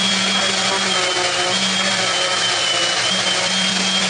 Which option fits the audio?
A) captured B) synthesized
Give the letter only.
A